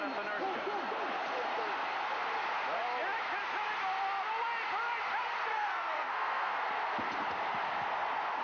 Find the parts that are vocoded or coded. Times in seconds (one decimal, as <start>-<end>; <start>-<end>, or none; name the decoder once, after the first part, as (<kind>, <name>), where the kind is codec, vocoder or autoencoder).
5.5-6.6 (codec, SNAC)